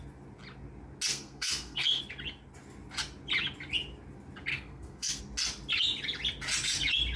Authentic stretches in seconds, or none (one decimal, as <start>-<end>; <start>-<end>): 0.0-1.1; 2.0-4.5; 5.2-7.2